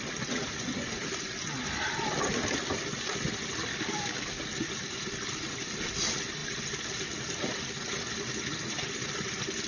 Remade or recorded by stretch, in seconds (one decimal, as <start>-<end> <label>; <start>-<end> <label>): 0.0-3.7 recorded; 3.7-4.4 remade; 4.4-9.7 recorded